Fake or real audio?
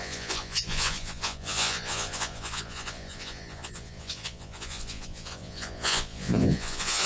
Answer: fake